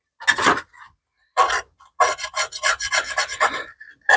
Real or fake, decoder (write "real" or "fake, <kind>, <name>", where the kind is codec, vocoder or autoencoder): real